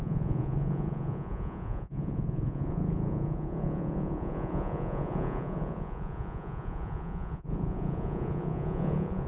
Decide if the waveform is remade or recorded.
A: remade